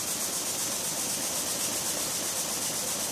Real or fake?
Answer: real